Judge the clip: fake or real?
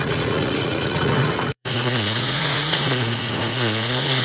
fake